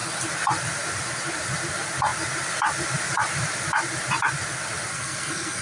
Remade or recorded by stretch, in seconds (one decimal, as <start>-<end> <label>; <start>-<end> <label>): 0.0-4.9 recorded; 4.9-5.6 remade